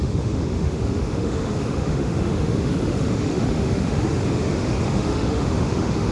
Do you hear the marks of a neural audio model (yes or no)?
yes